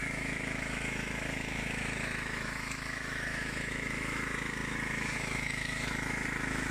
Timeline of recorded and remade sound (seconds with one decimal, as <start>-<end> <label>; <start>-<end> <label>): 0.0-6.7 remade